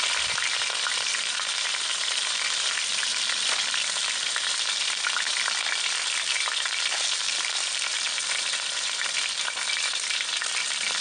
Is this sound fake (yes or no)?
no